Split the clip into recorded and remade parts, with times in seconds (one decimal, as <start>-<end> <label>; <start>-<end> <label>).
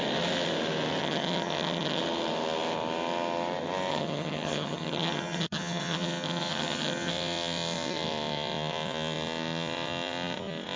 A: 0.0-1.0 recorded; 1.0-2.0 remade; 2.0-3.9 recorded; 3.9-7.1 remade; 7.1-10.8 recorded